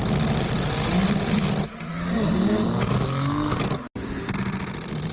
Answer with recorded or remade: recorded